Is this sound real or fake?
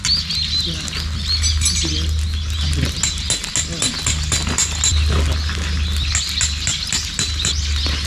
real